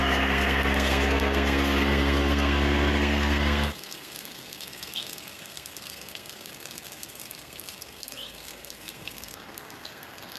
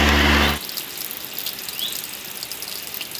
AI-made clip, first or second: first